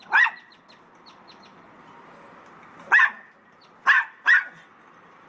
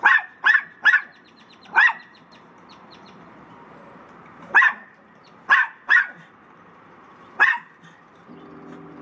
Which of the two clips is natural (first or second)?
first